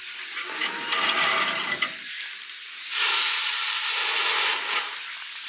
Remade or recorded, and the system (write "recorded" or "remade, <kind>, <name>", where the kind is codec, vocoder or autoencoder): recorded